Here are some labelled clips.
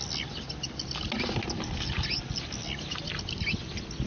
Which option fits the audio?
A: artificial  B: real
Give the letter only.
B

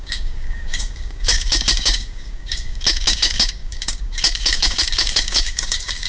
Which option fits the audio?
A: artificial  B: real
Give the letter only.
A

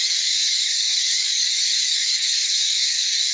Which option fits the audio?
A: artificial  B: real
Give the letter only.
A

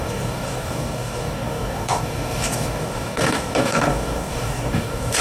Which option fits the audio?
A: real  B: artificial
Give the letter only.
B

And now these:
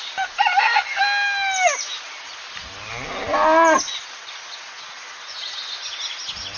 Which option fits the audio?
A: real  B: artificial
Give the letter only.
A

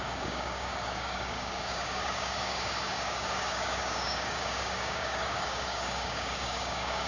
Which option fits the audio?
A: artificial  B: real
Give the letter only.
A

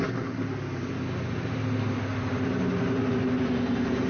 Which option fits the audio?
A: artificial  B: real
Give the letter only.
B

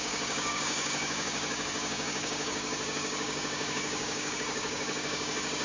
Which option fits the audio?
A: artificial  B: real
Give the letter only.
A